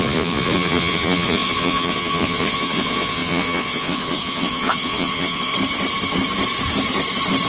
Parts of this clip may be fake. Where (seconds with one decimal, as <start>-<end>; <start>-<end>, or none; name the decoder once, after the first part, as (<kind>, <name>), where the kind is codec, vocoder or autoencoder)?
0.0-5.5 (vocoder, Vocos)